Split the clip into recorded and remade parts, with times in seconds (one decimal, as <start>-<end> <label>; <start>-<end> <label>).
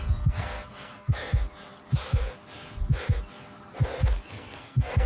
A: 0.0-1.2 remade; 1.2-4.3 recorded; 4.3-5.1 remade